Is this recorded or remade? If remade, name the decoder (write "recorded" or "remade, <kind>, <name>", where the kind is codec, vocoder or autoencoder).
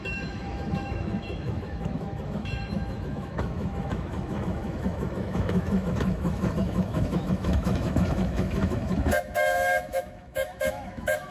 remade, autoencoder, DAC-VAE